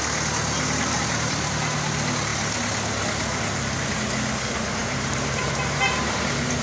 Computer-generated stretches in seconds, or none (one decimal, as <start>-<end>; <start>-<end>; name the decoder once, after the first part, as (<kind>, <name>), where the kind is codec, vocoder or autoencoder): none